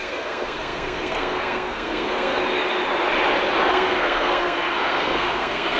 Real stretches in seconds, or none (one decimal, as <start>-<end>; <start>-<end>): 2.4-3.7